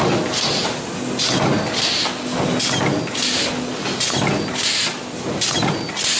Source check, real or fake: real